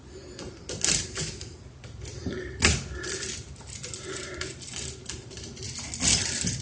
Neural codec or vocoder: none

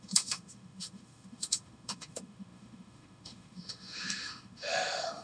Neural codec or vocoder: autoencoder, DAC-VAE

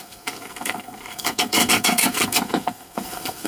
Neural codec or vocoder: codec, SNAC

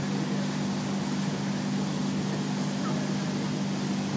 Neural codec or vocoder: none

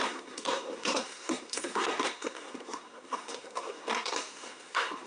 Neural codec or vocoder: codec, SNAC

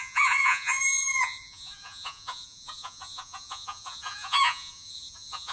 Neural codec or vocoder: vocoder, Vocos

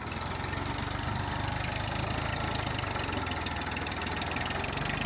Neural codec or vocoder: none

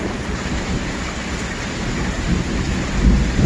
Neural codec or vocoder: vocoder, BigVGAN v2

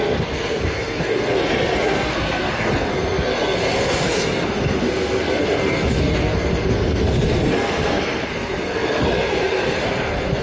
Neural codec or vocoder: codec, SNAC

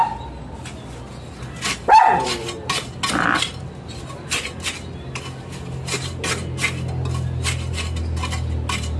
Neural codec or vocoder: none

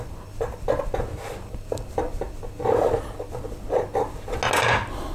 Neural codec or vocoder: none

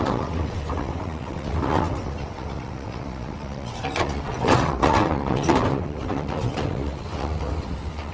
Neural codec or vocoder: vocoder, WaveNeXt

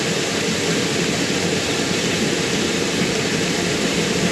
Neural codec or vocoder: none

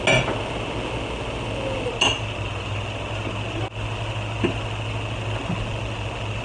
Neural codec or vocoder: none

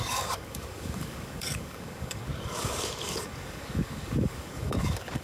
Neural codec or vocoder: codec, DAC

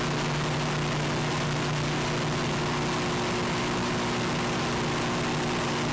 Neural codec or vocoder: none